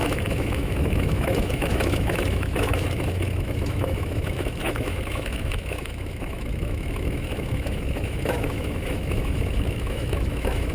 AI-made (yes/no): yes